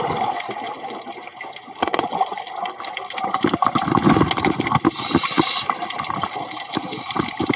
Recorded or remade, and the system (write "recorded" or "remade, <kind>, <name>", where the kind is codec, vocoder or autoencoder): recorded